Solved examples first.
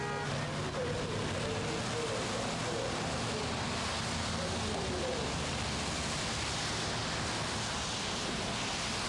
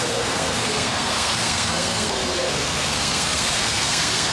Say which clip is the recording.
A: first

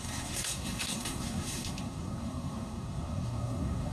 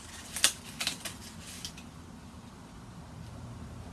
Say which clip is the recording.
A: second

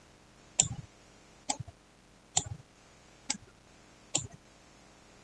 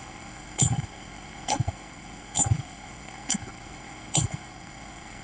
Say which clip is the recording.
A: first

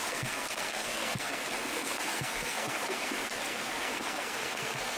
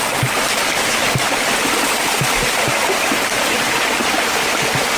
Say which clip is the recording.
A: second